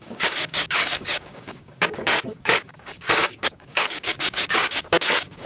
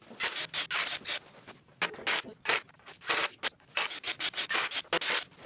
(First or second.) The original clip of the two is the second